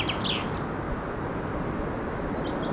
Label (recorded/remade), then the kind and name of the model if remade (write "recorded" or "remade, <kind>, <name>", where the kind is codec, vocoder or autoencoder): recorded